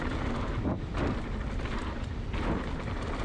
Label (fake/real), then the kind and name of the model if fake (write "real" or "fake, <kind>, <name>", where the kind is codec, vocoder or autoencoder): real